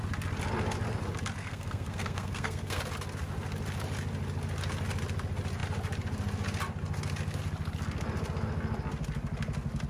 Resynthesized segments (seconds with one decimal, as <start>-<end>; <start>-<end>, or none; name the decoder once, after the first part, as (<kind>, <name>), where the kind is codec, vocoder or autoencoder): 1.4-2.8 (codec, SNAC)